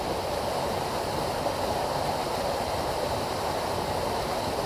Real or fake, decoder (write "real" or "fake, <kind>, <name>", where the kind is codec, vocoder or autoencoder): real